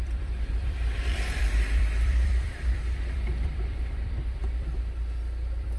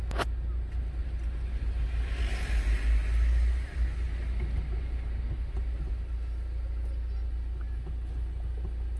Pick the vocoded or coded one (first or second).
first